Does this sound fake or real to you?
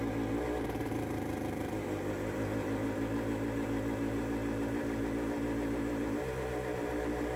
fake